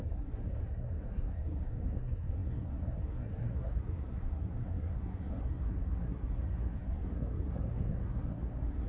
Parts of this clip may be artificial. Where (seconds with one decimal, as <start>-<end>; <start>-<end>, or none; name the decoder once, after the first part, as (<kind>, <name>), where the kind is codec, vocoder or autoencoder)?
0.0-8.9 (codec, SNAC)